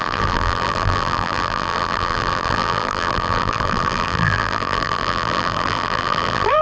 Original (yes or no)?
no